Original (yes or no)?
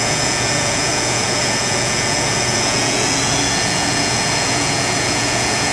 no